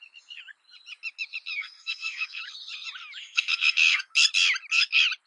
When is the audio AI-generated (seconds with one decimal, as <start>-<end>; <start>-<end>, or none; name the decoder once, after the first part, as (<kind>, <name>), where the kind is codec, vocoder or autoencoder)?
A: 1.5-2.4 (codec, SNAC); 3.2-4.0